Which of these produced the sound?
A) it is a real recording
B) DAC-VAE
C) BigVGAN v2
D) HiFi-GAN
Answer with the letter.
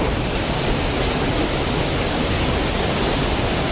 A